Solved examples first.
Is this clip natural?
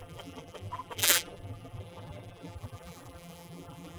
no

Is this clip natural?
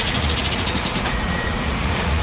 no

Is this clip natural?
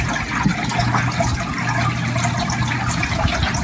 yes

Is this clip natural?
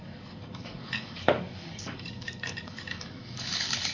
no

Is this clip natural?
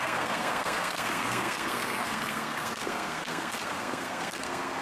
no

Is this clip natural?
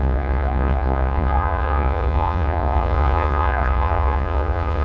no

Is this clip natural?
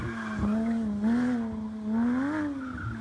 yes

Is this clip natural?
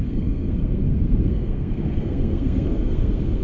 no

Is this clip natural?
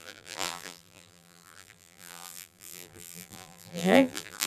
no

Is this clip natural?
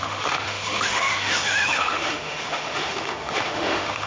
no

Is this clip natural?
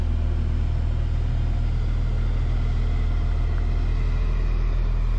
yes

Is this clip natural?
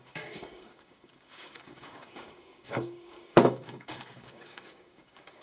no